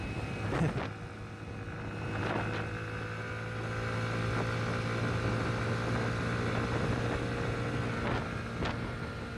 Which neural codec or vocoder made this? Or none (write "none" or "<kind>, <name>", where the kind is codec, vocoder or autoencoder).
none